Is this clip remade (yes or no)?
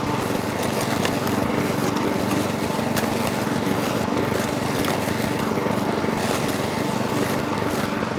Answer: no